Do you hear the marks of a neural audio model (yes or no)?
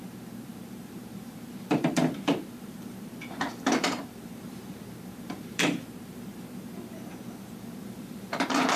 yes